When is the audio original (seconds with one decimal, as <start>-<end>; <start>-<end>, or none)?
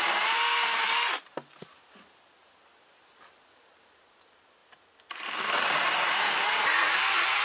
0.8-2.4; 4.6-6.1